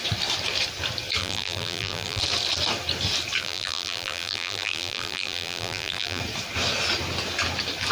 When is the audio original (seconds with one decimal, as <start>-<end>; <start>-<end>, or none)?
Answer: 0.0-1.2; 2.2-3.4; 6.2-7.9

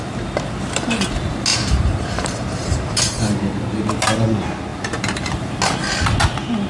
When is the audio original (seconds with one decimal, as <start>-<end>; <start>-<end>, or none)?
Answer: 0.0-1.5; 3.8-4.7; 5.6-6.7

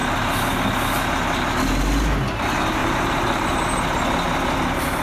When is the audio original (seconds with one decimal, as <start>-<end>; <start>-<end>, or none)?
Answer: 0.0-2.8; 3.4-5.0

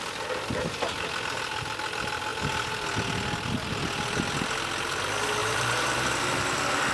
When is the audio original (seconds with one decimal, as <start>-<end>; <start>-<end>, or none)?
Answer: 0.0-5.4; 6.0-6.9

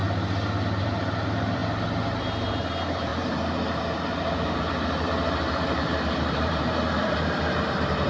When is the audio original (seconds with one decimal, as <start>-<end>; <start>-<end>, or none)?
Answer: 0.0-0.8; 1.6-2.5

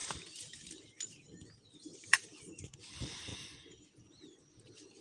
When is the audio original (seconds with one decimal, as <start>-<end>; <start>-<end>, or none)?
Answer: 0.0-1.9; 2.8-5.0